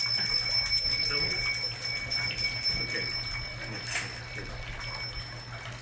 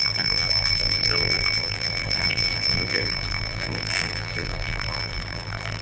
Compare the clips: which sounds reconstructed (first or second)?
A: second